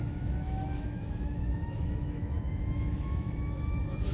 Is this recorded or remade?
remade